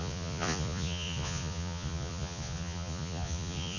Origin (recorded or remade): remade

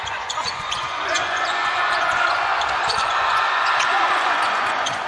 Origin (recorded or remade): remade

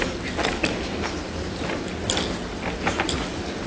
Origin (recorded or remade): recorded